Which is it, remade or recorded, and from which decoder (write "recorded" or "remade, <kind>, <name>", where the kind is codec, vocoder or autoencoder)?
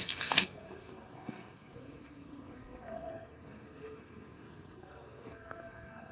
remade, codec, SNAC